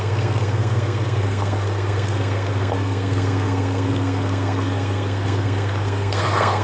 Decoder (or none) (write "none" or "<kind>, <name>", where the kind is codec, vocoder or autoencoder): codec, SNAC